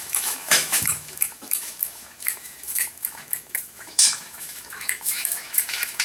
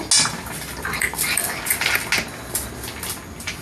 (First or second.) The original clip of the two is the second